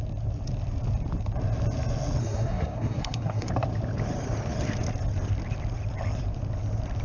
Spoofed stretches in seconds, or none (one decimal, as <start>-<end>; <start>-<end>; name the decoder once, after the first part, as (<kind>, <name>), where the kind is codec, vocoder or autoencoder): 2.2-3.5 (codec, SNAC)